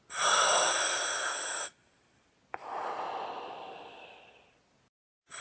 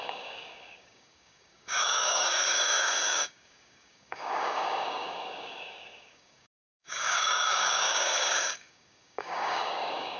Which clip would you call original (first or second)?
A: first